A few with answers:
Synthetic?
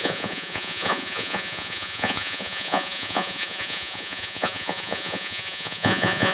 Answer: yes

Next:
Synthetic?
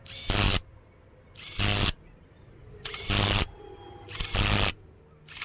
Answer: no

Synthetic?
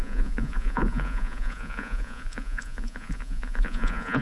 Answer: yes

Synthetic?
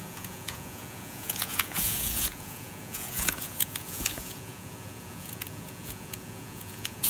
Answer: yes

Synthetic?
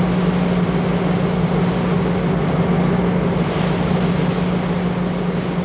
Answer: no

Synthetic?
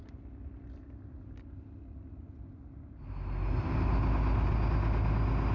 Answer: no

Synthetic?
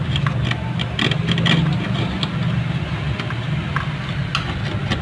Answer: no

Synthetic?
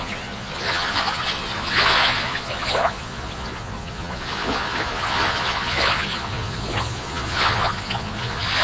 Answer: yes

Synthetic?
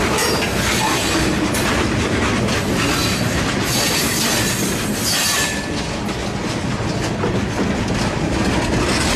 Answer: no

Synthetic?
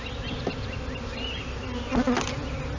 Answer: no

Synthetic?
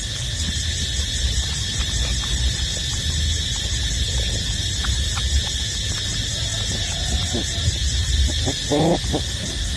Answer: no